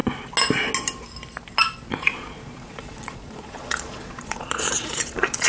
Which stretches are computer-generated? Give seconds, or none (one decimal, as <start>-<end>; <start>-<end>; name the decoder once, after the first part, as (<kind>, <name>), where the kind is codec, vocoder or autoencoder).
1.9-5.5 (vocoder, Vocos)